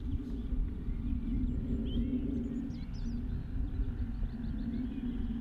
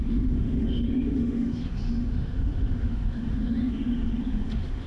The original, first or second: first